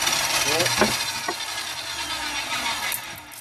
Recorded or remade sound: recorded